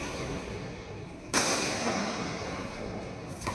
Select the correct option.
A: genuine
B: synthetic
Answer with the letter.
B